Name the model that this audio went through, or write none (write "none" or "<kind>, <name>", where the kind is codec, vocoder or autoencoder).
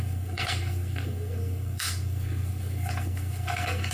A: codec, SNAC